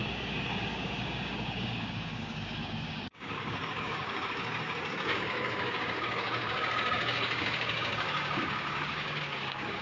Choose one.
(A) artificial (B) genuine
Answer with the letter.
A